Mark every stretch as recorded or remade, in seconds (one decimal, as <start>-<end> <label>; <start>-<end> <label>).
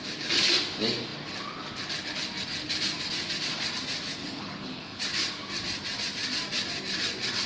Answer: 0.0-4.2 recorded; 4.2-5.0 remade; 5.0-7.5 recorded